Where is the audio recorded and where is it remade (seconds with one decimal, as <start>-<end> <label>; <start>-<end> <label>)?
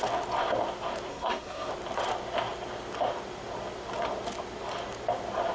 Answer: 0.0-1.1 recorded; 1.1-1.7 remade; 1.7-5.5 recorded